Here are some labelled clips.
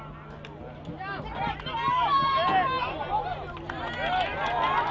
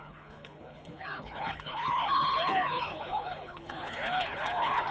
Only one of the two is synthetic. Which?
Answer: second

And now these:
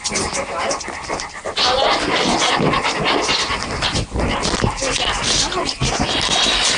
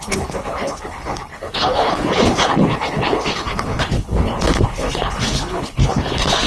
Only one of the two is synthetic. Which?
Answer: second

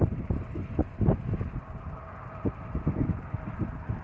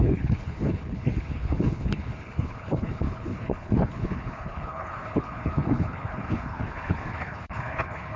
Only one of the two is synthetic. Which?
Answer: second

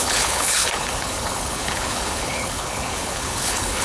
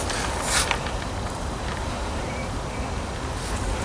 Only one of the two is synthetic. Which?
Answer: first